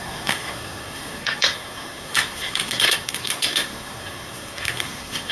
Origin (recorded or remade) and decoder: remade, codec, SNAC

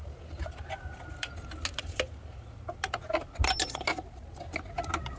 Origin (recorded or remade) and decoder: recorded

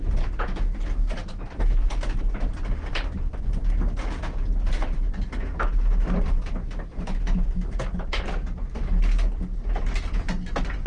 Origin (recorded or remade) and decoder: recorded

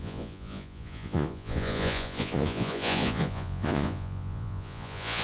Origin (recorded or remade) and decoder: remade, vocoder, Vocos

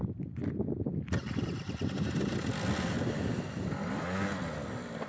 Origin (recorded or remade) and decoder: recorded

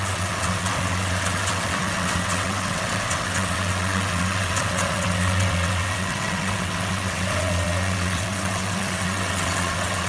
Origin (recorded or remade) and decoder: remade, vocoder, WaveNeXt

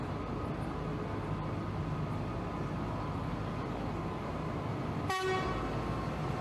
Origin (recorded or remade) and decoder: recorded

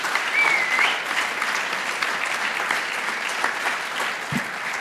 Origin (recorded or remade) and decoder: recorded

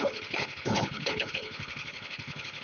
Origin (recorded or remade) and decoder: remade, codec, HILCodec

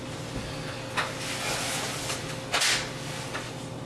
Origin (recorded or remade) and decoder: recorded